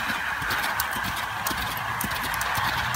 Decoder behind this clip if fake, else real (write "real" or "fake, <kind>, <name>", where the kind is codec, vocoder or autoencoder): real